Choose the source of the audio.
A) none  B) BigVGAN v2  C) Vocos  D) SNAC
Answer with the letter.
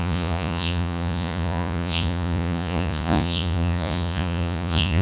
C